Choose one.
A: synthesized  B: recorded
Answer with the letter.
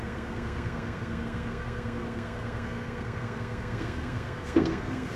A